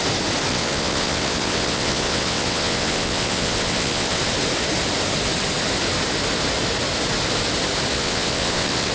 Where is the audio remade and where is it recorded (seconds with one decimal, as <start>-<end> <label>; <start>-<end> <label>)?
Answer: 0.0-0.5 recorded; 0.5-4.2 remade; 4.2-7.9 recorded; 7.9-8.9 remade